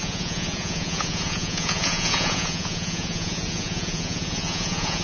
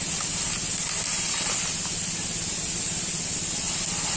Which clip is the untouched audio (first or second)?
second